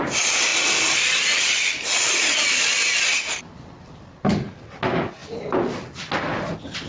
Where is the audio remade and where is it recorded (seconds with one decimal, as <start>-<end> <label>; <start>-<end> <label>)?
0.0-6.9 recorded